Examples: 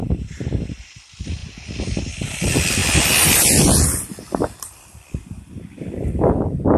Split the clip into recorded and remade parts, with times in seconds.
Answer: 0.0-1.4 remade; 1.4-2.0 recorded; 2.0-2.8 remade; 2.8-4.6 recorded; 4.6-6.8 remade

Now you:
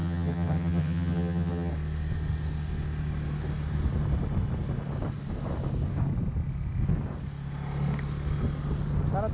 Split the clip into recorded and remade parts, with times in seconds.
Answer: 0.0-1.7 remade; 1.7-9.3 recorded

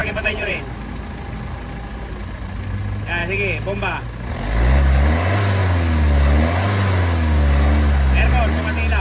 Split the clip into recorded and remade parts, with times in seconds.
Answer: 0.0-0.6 remade; 0.6-9.0 recorded

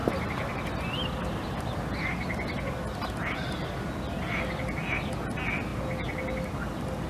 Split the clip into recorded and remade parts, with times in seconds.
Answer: 0.0-0.7 remade; 0.7-7.1 recorded

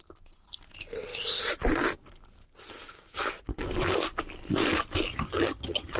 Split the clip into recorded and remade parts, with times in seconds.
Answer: 0.0-5.1 recorded; 5.1-6.0 remade